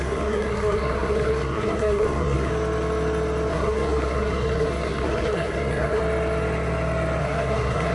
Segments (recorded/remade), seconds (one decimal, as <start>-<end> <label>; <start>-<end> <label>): 0.0-2.5 remade; 2.5-3.5 recorded; 3.5-6.0 remade; 6.0-7.2 recorded; 7.2-7.9 remade